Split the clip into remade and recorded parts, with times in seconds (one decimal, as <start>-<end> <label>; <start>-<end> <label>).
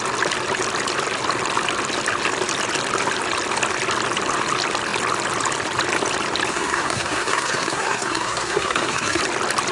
0.0-6.5 recorded; 6.5-9.2 remade; 9.2-9.7 recorded